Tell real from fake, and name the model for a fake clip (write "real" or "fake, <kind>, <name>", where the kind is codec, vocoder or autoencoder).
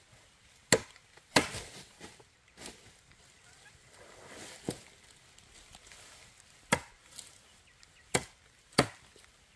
real